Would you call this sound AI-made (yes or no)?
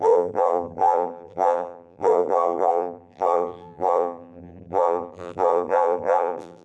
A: yes